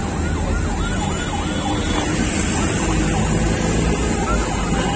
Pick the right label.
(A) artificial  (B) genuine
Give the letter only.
B